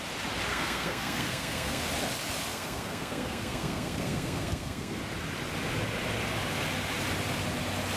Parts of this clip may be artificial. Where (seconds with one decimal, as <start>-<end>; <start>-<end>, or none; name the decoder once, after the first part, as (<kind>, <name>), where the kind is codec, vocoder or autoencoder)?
0.5-1.8 (codec, SNAC); 2.5-5.0